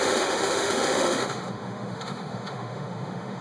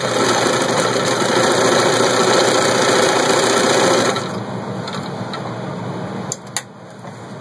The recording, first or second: second